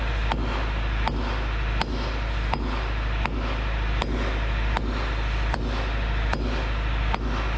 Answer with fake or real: real